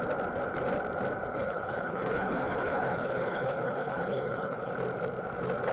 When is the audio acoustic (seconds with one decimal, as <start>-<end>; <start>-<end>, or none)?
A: 0.0-1.3; 4.7-5.7